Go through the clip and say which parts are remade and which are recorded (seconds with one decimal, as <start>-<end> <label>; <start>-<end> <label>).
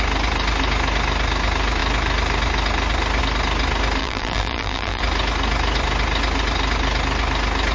0.0-4.0 recorded; 4.0-5.0 remade; 5.0-7.7 recorded